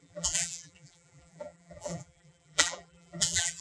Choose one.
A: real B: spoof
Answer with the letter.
B